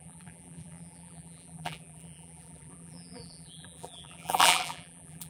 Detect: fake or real fake